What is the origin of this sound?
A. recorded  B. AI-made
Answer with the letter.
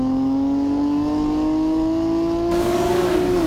B